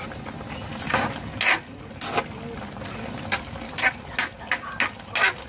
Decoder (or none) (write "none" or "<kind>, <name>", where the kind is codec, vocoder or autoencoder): none